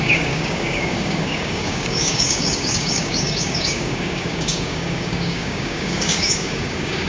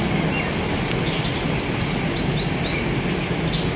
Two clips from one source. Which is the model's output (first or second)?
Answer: first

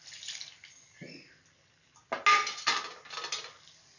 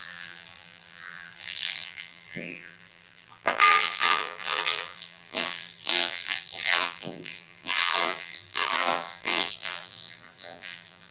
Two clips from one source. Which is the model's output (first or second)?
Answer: second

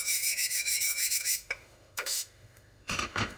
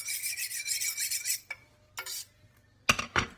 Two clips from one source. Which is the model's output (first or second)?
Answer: first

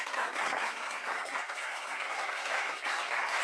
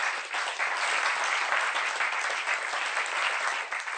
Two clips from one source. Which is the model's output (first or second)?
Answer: first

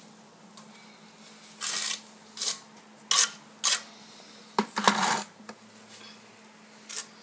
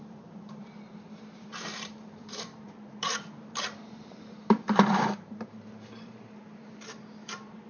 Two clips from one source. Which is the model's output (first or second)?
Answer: second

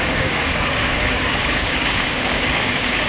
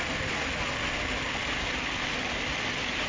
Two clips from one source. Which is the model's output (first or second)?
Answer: first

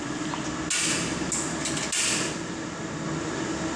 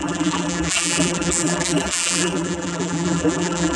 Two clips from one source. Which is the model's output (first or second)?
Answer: second